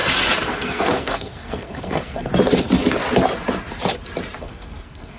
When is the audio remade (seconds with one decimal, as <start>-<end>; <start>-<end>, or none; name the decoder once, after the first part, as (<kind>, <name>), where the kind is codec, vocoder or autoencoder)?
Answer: 0.5-2.3 (codec, SNAC); 4.4-5.2